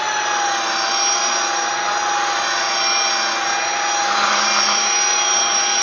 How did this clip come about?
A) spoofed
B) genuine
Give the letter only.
B